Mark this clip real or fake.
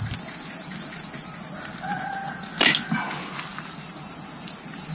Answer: real